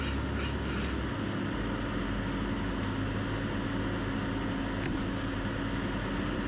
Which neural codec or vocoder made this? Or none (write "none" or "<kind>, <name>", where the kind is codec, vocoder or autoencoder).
none